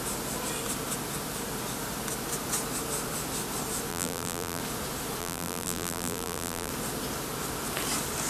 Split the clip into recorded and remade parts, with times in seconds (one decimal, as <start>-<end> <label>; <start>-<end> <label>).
0.0-3.9 recorded; 3.9-4.6 remade; 4.6-5.2 recorded; 5.2-6.7 remade; 6.7-8.3 recorded